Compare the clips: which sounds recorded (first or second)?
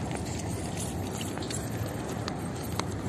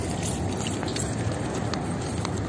second